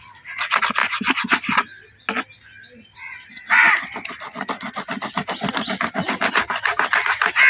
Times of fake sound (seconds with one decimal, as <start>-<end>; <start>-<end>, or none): none